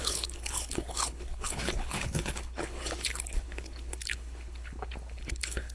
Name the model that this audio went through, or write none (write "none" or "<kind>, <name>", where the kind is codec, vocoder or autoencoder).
codec, HILCodec